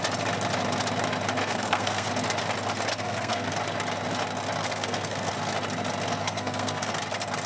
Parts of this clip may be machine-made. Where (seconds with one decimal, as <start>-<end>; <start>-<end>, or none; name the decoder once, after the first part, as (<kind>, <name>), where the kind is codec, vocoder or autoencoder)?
1.4-2.1 (codec, SNAC); 2.9-3.5; 4.6-5.3; 6.2-6.9

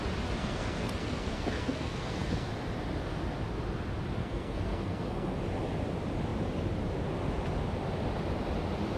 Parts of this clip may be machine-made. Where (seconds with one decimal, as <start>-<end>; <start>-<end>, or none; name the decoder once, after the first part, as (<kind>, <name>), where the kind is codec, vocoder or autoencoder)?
0.4-2.5 (codec, SNAC); 4.2-5.4

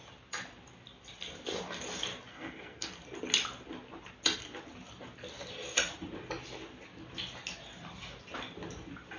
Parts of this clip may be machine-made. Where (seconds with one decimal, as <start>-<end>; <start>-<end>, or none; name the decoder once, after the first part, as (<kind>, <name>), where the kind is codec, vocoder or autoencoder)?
2.3-2.9 (codec, SNAC)

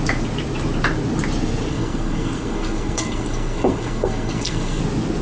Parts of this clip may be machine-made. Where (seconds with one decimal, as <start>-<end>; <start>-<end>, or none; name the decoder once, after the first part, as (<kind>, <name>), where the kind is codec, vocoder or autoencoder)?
1.7-4.8 (codec, SNAC)

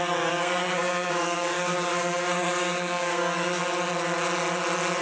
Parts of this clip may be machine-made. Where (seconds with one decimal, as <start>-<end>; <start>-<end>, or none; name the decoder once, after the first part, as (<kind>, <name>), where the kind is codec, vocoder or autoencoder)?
0.0-3.6 (codec, SNAC)

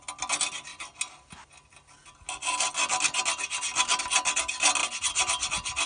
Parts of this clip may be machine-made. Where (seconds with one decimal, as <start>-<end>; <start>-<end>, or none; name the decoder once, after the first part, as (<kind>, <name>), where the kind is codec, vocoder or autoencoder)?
none

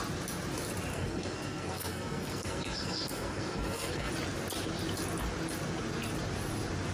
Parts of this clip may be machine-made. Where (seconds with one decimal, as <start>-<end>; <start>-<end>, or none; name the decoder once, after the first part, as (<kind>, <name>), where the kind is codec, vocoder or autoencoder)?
0.9-4.1 (codec, SNAC)

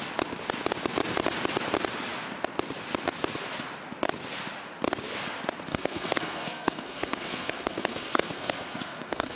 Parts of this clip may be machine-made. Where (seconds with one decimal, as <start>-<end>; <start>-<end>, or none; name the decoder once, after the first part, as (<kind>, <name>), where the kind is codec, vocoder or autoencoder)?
5.7-9.4 (codec, SNAC)